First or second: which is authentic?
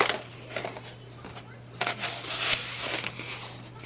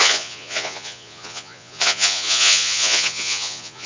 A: first